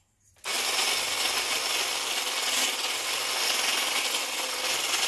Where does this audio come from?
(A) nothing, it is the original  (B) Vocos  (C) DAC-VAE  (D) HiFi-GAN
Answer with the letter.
A